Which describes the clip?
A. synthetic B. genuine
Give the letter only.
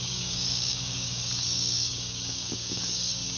A